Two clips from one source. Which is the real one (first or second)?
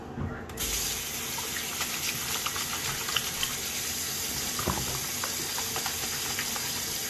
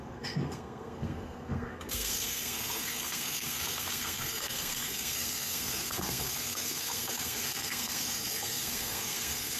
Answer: first